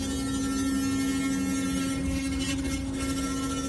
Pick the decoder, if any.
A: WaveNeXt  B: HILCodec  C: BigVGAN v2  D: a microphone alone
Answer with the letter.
D